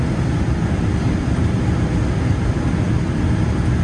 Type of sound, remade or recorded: recorded